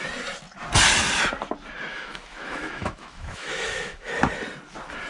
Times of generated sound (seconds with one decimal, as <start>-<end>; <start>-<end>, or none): 1.9-4.1